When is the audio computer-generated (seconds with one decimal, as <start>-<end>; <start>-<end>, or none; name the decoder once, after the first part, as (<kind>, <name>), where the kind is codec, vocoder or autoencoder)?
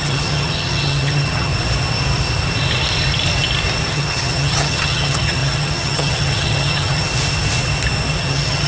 0.0-1.5 (vocoder, HiFi-GAN); 3.9-7.1; 8.2-8.7